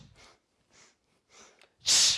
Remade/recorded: recorded